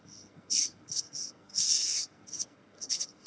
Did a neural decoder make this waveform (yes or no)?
yes